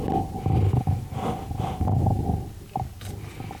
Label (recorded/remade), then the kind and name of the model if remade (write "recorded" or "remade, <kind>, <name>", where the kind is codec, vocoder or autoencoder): recorded